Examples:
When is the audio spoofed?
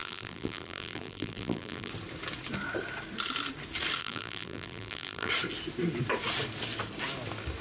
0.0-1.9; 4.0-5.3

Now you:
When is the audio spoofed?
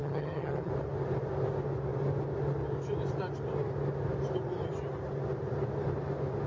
0.0-0.7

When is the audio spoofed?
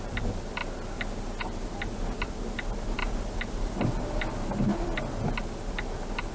none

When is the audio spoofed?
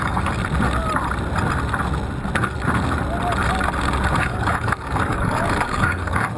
0.0-0.4; 4.2-6.4